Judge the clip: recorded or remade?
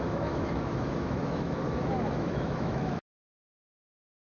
remade